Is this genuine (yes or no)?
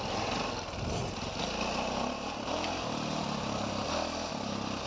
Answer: yes